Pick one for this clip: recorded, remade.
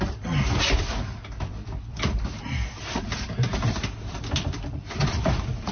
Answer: recorded